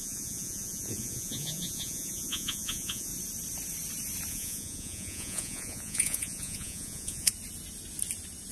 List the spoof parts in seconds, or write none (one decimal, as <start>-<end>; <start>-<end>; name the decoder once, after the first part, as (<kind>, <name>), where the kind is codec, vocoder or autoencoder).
0.0-3.1 (vocoder, Vocos); 4.3-7.3

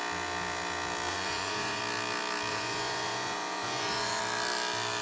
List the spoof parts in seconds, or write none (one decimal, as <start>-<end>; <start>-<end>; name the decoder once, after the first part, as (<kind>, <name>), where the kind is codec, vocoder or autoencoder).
1.1-1.8 (vocoder, Vocos); 2.5-4.2

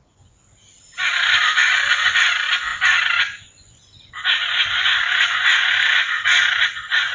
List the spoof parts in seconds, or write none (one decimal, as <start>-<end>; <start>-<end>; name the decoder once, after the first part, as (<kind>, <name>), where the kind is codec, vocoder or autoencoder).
0.0-0.4 (vocoder, Vocos); 1.1-7.1

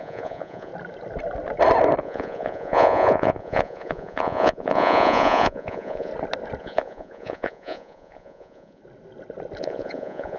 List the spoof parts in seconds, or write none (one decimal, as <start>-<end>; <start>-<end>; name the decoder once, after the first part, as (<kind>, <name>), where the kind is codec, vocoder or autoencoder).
0.0-0.7 (vocoder, Vocos); 2.0-6.1; 6.6-8.8; 9.6-10.4

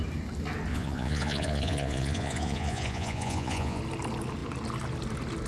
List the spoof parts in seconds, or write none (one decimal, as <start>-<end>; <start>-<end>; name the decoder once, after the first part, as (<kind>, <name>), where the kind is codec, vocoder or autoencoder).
0.7-3.8 (vocoder, Vocos)

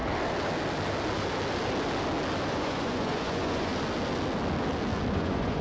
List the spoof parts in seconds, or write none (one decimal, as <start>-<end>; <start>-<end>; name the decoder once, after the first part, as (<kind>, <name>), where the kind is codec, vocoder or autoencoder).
2.5-3.7 (vocoder, Vocos); 5.1-5.6

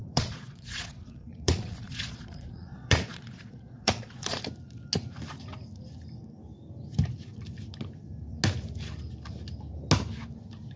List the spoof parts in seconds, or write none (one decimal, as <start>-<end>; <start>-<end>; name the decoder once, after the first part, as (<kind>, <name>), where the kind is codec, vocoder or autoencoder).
0.0-4.4 (vocoder, Vocos)

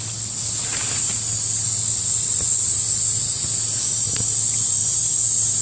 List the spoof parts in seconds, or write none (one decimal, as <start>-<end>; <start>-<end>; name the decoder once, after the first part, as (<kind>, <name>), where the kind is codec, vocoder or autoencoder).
none